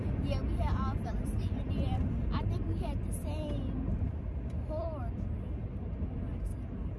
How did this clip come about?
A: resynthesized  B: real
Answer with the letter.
B